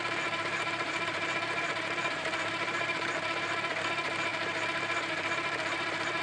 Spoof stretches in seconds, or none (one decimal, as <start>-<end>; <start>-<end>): 0.0-3.7; 4.3-6.2